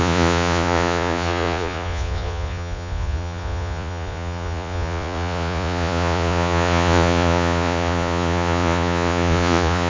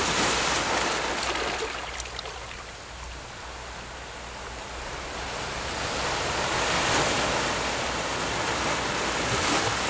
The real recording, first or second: second